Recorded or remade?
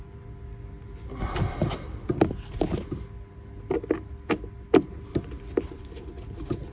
recorded